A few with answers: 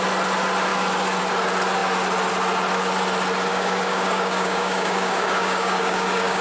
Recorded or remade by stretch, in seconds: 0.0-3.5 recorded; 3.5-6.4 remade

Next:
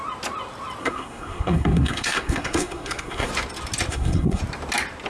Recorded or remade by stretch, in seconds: 0.0-0.8 recorded; 0.8-3.3 remade; 3.3-3.9 recorded; 3.9-4.4 remade; 4.4-5.1 recorded

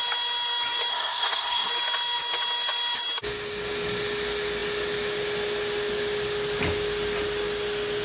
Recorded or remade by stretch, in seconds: 0.0-0.9 recorded; 0.9-1.7 remade; 1.7-8.0 recorded

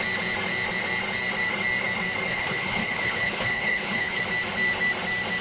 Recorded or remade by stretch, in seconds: 0.0-2.3 recorded; 2.3-4.2 remade; 4.2-5.4 recorded